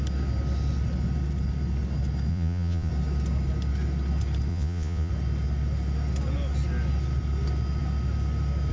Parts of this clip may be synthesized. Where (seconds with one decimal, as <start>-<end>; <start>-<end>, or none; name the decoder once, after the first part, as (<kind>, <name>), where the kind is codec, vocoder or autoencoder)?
2.3-2.9 (vocoder, Vocos); 4.5-5.1